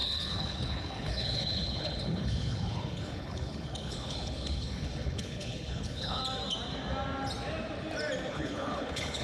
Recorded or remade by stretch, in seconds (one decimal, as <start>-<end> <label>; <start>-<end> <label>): 0.0-6.2 remade; 6.2-8.3 recorded; 8.3-9.2 remade